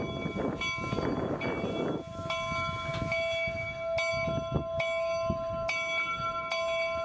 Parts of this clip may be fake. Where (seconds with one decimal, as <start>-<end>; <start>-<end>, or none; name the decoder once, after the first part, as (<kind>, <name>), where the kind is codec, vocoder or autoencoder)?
none

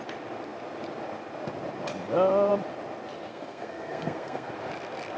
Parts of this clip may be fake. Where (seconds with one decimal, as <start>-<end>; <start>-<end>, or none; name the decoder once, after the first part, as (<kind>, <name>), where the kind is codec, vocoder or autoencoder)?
3.3-4.5 (codec, SNAC)

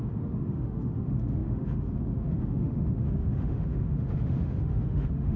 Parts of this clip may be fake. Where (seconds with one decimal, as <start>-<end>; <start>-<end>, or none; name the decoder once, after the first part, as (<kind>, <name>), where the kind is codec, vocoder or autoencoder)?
0.0-5.4 (autoencoder, DAC-VAE)